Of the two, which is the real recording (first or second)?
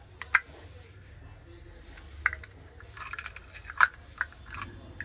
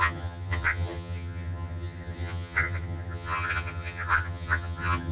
first